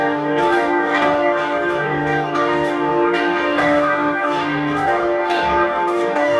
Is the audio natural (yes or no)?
no